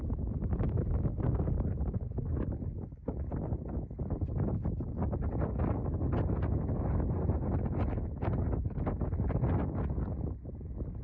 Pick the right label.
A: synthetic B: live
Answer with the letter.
B